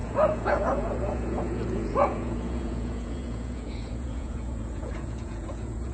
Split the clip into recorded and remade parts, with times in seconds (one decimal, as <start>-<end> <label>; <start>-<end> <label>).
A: 0.0-5.9 remade